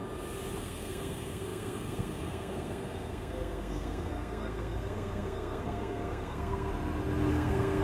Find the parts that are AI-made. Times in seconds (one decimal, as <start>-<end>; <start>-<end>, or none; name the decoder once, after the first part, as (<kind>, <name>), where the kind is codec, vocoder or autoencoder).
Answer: 0.6-6.7 (codec, SNAC); 7.3-7.8